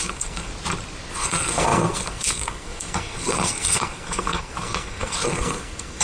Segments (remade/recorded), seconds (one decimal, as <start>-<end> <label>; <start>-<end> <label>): 0.0-0.5 remade; 0.5-1.1 recorded; 1.1-6.0 remade